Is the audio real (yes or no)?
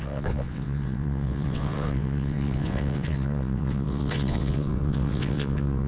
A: no